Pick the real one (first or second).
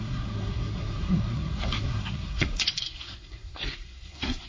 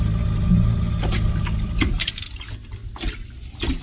second